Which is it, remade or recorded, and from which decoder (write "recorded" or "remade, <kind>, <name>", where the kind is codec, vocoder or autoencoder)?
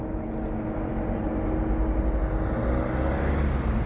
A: recorded